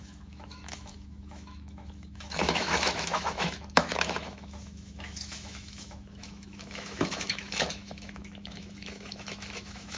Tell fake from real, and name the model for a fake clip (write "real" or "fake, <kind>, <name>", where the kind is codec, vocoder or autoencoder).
fake, autoencoder, DAC-VAE